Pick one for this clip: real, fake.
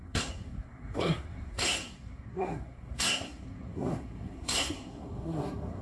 fake